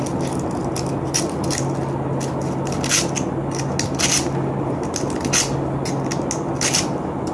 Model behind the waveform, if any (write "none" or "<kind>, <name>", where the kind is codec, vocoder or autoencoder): none